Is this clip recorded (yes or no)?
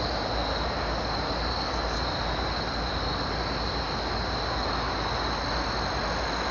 yes